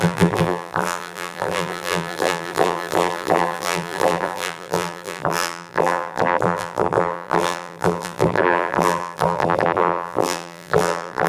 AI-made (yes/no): yes